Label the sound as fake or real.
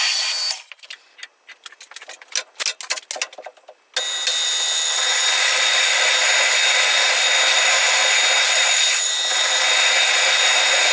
real